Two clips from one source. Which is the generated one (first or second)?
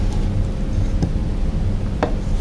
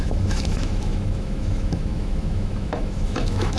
second